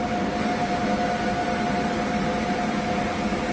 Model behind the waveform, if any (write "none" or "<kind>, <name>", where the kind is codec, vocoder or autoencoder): none